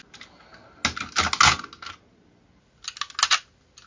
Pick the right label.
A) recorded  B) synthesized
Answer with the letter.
A